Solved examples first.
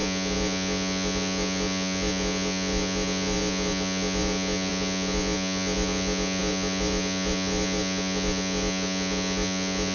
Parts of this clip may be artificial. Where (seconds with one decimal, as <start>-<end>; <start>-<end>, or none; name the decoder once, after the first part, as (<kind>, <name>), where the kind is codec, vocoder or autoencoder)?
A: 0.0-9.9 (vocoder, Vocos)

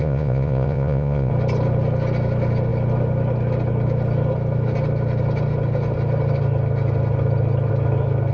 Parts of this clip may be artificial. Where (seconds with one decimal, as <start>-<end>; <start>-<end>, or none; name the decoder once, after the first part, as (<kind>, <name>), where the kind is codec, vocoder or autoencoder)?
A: 0.0-1.3 (vocoder, Vocos)

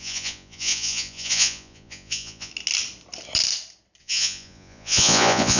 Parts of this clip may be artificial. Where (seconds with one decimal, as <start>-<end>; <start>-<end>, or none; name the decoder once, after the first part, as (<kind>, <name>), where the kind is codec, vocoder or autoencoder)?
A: 0.0-2.5 (vocoder, Vocos); 4.0-5.6

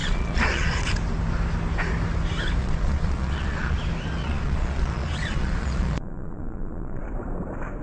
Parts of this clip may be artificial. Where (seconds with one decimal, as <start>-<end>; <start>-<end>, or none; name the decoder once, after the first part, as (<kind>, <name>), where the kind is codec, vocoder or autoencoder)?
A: 0.0-0.9 (vocoder, Vocos); 2.6-3.8; 4.2-7.0

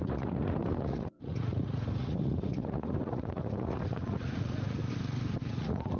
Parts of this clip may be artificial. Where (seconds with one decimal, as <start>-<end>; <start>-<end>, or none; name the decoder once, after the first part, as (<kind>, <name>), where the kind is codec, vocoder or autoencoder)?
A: 0.0-4.8 (vocoder, Vocos); 5.5-6.0